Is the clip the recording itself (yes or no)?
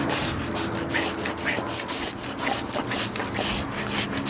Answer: yes